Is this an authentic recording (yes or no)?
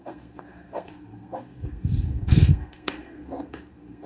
no